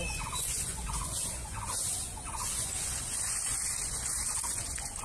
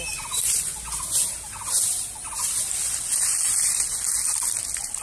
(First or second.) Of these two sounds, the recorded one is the second